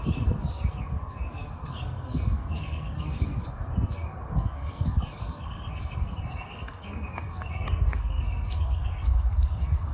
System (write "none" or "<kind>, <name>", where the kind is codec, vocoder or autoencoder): codec, SNAC